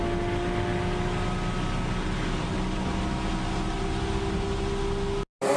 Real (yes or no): yes